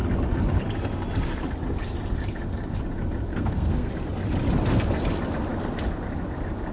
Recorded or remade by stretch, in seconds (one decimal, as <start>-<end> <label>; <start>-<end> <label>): 0.0-3.3 recorded; 3.3-3.9 remade; 3.9-6.7 recorded